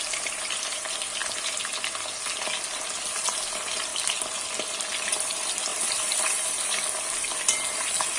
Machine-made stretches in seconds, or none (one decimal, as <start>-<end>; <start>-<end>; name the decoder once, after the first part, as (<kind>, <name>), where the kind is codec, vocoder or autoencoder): 1.2-1.7 (vocoder, BigVGAN v2); 3.9-4.5; 5.7-6.8